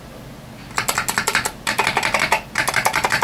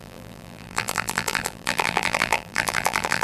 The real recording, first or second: first